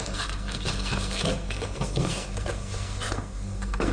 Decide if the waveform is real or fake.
fake